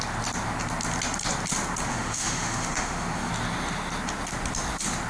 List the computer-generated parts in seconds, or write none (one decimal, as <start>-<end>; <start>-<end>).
1.9-3.3